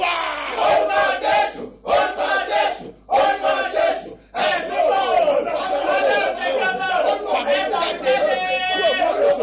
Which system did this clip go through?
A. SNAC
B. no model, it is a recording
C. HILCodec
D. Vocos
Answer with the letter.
B